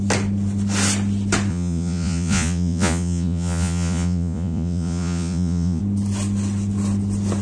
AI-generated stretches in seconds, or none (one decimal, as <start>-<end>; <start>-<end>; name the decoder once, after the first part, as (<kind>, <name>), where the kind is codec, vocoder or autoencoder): 1.5-5.8 (vocoder, Vocos)